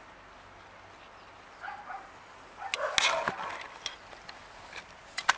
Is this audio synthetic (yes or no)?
no